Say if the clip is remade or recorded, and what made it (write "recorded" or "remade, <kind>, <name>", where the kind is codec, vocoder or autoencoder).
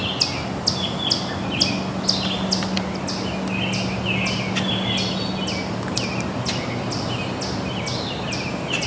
recorded